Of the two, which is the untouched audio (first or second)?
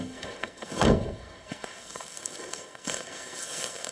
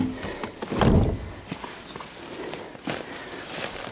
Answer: second